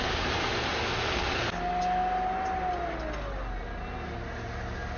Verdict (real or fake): real